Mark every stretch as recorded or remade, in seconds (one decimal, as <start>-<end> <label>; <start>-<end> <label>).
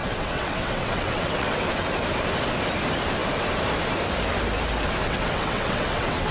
0.0-1.6 remade; 1.6-5.0 recorded; 5.0-6.3 remade